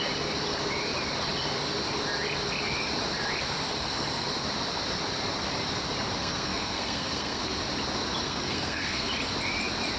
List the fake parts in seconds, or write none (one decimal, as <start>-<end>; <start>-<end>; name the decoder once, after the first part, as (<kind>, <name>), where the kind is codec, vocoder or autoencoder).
3.7-4.3 (codec, SNAC); 6.2-7.4; 8.2-9.1